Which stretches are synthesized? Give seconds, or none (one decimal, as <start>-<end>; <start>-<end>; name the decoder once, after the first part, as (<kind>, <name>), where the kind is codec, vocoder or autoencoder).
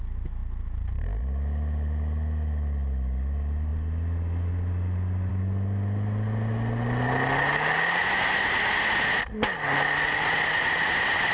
none